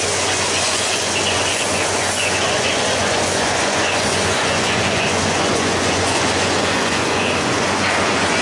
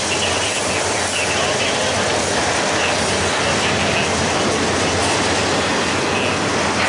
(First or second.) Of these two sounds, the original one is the second